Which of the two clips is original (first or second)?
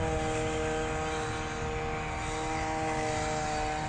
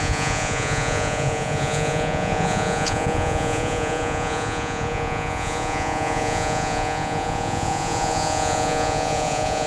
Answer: first